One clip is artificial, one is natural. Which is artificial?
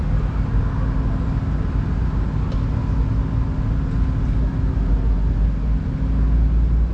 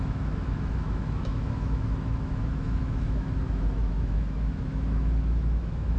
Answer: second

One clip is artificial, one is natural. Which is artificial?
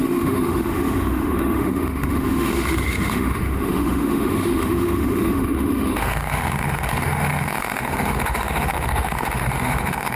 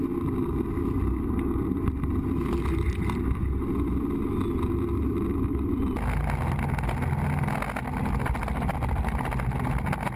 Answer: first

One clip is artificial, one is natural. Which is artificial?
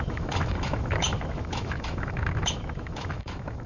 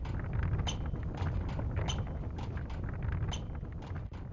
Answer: first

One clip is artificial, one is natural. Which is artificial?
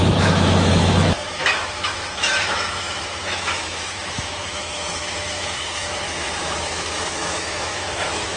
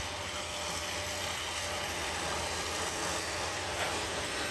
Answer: first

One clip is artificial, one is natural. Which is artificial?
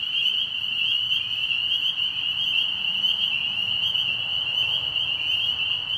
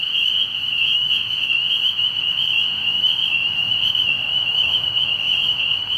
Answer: second